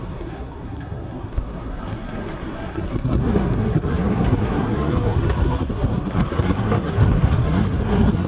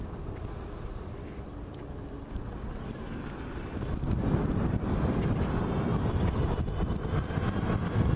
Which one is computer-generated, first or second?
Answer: first